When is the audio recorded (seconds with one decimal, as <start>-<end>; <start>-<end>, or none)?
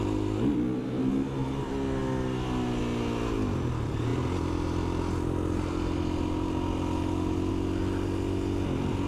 0.0-9.1